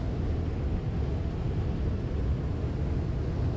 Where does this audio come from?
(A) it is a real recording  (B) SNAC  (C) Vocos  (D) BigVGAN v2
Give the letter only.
A